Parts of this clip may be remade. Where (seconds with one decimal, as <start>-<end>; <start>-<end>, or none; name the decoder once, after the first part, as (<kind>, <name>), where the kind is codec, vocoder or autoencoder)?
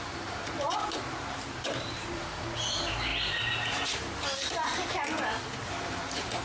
0.0-3.1 (vocoder, BigVGAN v2); 5.7-6.4